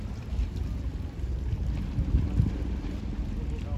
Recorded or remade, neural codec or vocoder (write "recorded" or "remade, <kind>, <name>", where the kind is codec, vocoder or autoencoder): recorded